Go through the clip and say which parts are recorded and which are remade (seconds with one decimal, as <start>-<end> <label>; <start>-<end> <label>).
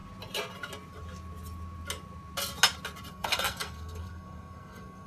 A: 0.0-3.1 recorded; 3.1-5.1 remade